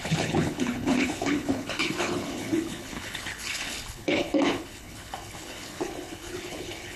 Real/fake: fake